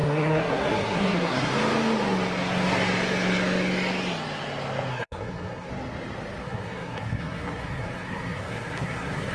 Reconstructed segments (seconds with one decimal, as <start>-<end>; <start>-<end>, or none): 0.0-1.5; 4.9-5.7; 6.4-9.3